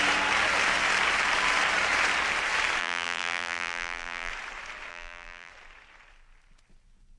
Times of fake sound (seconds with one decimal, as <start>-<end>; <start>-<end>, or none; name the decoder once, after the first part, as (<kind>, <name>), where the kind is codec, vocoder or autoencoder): 2.8-4.3 (vocoder, BigVGAN v2); 4.9-5.5